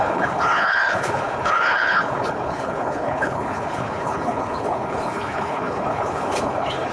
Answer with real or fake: fake